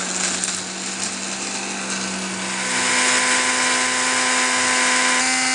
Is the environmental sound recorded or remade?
recorded